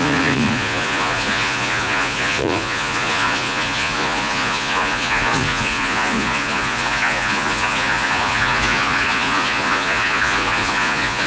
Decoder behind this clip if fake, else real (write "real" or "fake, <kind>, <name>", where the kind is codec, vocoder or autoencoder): fake, vocoder, Vocos